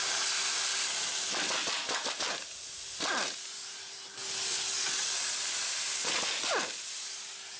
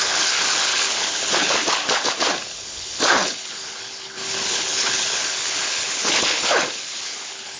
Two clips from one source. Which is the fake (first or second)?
second